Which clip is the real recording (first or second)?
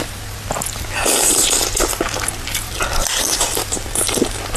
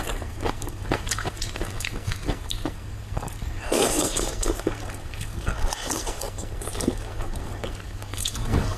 first